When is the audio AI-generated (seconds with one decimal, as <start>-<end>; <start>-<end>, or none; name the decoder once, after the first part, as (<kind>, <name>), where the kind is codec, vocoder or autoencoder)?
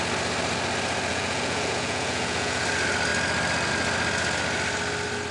1.1-2.6 (vocoder, Vocos)